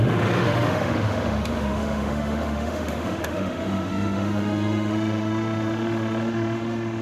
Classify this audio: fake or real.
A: fake